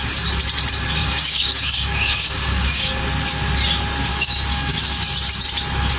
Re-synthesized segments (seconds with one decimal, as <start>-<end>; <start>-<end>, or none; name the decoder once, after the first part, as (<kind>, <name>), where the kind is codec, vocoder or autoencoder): 1.0-3.0 (codec, DAC); 4.1-4.9